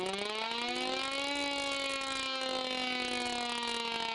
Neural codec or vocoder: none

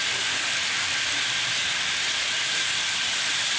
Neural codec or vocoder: none